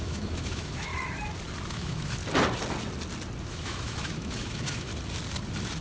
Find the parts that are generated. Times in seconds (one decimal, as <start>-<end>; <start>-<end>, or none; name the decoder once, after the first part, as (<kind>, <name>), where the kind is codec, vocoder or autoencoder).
0.0-0.9 (autoencoder, DAC-VAE); 1.7-2.2; 3.4-4.9